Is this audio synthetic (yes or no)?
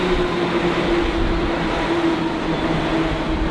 no